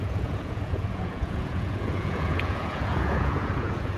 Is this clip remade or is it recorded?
remade